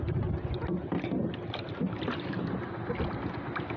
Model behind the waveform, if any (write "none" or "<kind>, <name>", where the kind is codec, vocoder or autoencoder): none